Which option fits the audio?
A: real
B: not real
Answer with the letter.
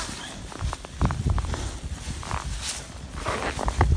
A